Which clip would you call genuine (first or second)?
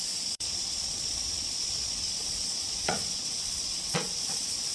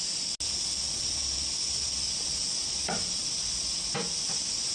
second